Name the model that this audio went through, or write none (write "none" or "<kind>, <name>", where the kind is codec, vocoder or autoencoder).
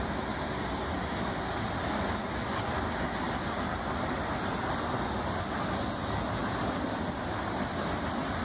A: none